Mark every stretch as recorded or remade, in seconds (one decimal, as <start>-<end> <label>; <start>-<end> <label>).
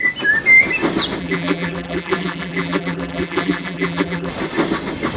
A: 0.0-1.2 recorded; 1.2-4.3 remade; 4.3-5.2 recorded